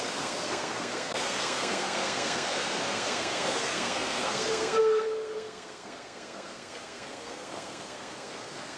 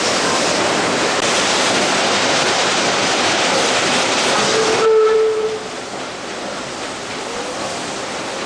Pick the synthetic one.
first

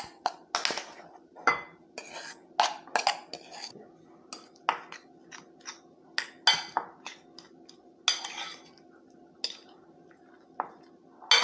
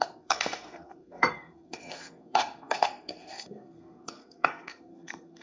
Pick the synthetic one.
second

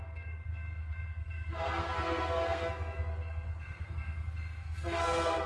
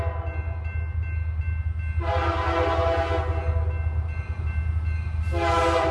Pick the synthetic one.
first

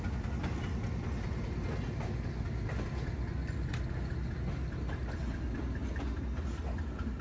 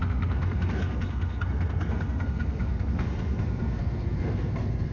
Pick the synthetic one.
second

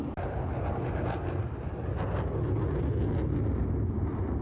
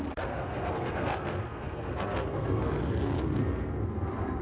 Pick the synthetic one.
second